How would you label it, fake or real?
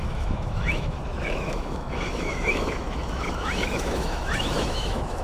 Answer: fake